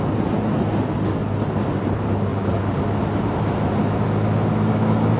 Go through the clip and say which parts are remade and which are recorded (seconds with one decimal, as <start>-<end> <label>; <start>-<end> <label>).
0.0-2.3 recorded; 2.3-2.8 remade; 2.8-5.2 recorded